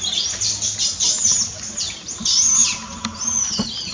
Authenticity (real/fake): real